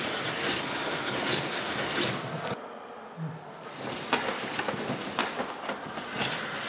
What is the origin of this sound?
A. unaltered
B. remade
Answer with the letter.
A